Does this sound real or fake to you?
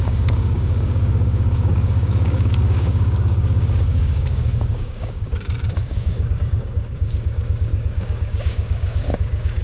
fake